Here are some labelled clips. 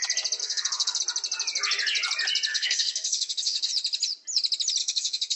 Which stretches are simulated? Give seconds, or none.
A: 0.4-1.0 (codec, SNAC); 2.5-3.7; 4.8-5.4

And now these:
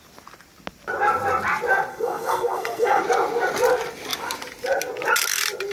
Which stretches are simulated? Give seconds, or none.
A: 1.9-3.0 (codec, SNAC)

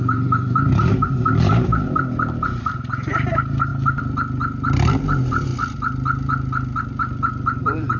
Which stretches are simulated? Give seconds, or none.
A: 0.0-3.7 (vocoder, BigVGAN v2); 4.9-5.5; 7.6-8.0

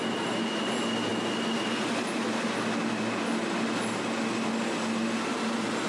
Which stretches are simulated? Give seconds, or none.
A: none

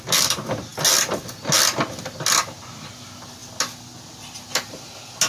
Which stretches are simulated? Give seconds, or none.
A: none

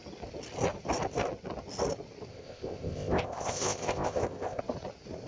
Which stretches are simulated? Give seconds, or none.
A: 2.3-4.6 (codec, ZipCodec)

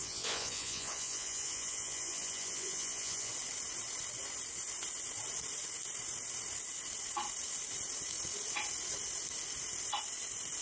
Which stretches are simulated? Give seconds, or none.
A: 0.0-3.3 (vocoder, Vocos)